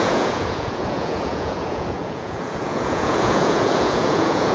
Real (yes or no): no